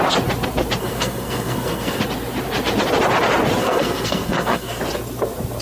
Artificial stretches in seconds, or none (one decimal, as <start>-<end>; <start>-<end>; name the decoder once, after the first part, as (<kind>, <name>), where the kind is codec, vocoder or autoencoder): 0.8-2.0 (codec, SNAC); 3.6-4.8